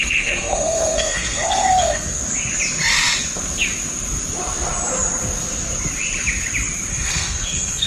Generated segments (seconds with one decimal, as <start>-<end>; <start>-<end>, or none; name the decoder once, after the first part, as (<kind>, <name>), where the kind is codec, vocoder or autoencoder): 0.0-2.2 (codec, SNAC); 6.9-7.9

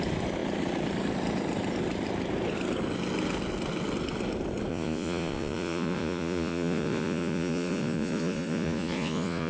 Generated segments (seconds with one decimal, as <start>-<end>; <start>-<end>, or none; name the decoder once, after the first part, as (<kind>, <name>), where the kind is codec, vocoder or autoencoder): 4.7-9.5 (vocoder, Vocos)

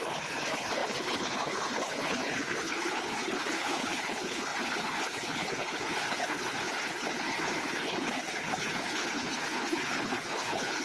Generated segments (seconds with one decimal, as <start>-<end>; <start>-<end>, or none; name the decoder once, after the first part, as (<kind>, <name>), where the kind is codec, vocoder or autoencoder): 0.0-10.8 (codec, HILCodec)

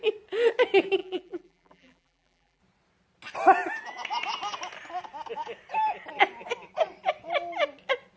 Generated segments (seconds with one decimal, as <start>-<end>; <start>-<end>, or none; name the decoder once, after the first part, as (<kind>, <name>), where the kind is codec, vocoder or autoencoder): 1.0-2.6 (vocoder, BigVGAN v2)

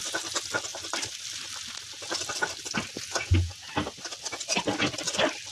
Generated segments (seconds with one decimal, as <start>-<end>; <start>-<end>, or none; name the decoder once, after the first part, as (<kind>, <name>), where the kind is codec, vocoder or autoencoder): 3.1-3.7 (vocoder, Vocos)

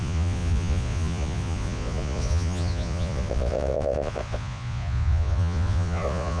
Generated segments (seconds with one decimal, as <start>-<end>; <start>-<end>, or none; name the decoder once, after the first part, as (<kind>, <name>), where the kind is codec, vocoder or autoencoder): 0.0-6.4 (vocoder, Vocos)